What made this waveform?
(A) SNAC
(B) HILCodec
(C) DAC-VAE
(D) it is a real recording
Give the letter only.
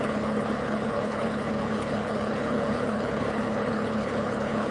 B